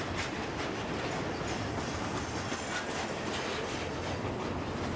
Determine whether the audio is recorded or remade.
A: recorded